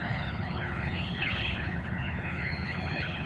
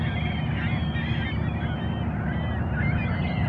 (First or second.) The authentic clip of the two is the second